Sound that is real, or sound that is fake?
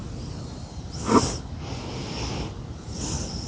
real